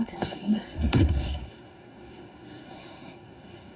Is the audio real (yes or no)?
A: no